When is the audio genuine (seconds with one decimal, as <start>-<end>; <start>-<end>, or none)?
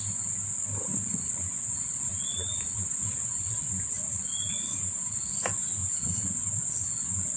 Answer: 0.0-0.9; 5.3-5.8